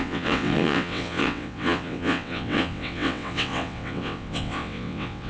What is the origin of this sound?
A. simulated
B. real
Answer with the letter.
A